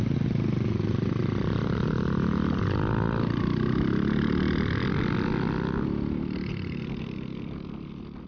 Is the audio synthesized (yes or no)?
no